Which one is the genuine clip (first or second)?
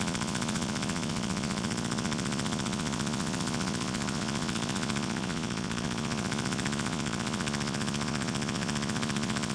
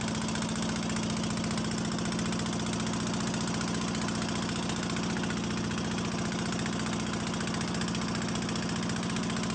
second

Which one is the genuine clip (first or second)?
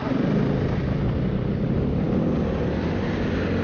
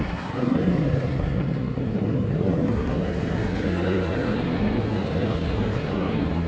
first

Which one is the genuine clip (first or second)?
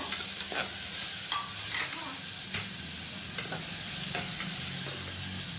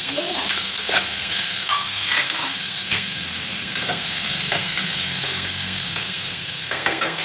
first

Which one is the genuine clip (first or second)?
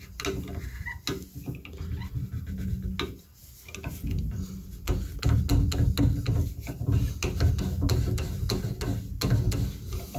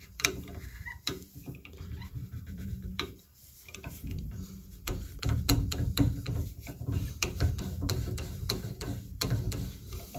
first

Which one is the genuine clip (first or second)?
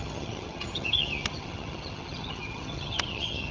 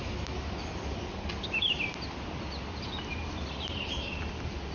second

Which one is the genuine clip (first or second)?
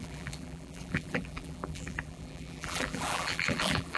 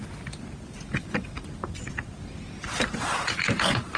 second